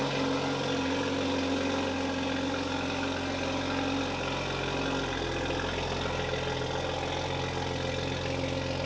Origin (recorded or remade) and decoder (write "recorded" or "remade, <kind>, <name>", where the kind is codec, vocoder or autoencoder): recorded